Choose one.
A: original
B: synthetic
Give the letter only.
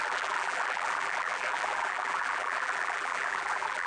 B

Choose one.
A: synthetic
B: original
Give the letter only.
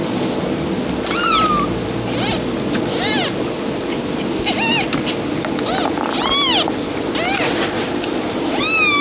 B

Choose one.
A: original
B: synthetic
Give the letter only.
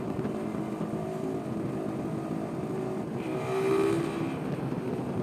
A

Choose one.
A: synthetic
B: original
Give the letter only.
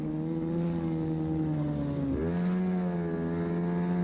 B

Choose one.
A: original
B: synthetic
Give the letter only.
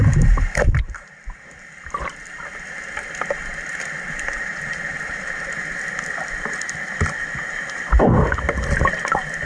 B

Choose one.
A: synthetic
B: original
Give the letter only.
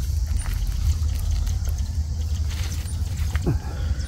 A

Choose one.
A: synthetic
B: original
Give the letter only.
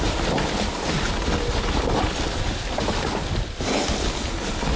B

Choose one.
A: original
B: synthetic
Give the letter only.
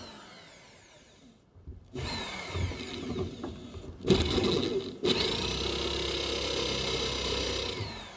A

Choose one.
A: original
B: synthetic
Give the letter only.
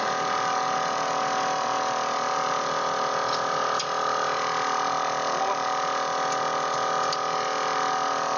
A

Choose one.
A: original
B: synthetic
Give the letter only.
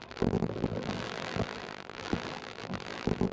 B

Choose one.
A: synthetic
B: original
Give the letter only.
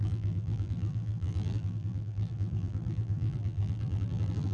A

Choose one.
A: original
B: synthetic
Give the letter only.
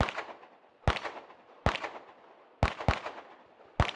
A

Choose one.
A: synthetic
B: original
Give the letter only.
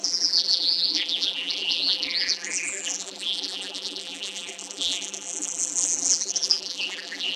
A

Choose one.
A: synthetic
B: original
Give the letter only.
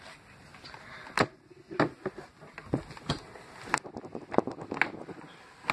B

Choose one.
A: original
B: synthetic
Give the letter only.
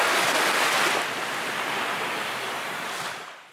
A